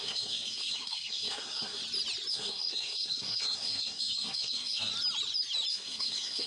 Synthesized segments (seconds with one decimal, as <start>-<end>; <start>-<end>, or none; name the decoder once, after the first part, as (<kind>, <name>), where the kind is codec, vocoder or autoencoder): 0.0-1.8 (codec, SNAC); 2.3-4.9; 5.7-6.5